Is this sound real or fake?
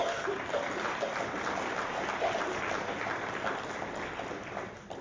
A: real